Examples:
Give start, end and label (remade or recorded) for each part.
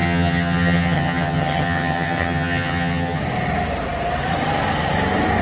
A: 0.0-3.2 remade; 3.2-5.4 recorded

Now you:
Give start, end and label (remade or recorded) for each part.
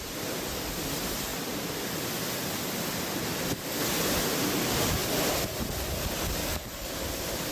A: 0.0-6.4 recorded; 6.4-6.9 remade; 6.9-7.5 recorded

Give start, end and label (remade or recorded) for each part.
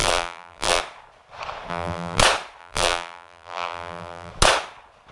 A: 0.0-0.8 remade; 0.8-1.7 recorded; 1.7-2.2 remade; 2.2-2.6 recorded; 2.6-4.3 remade; 4.3-5.1 recorded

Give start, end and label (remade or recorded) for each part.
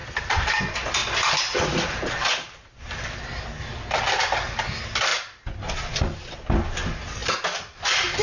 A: 0.0-8.2 recorded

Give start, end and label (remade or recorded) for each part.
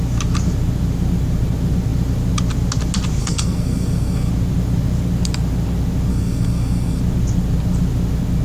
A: 0.0-3.2 recorded; 3.2-4.3 remade; 4.3-6.1 recorded; 6.1-7.0 remade; 7.0-8.4 recorded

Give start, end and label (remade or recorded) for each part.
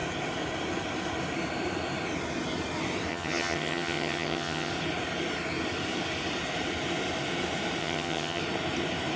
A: 0.0-3.1 recorded; 3.1-4.7 remade; 4.7-7.8 recorded; 7.8-8.4 remade; 8.4-9.2 recorded